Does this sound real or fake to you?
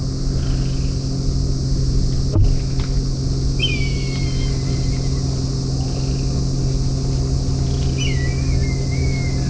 real